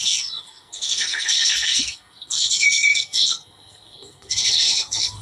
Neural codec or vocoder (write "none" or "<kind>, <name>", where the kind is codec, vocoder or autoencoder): codec, SNAC